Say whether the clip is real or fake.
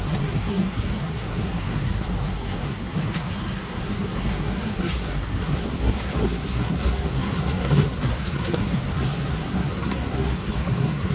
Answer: fake